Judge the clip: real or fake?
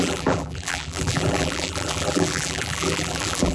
fake